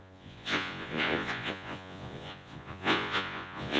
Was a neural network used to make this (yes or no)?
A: yes